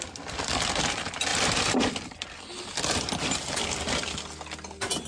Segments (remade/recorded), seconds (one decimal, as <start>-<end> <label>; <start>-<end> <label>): 0.0-5.1 recorded